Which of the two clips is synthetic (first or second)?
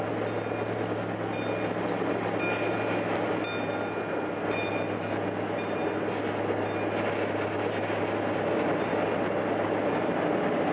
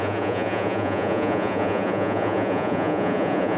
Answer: second